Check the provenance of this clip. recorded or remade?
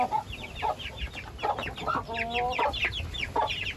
recorded